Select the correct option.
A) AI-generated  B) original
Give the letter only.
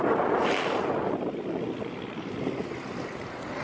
B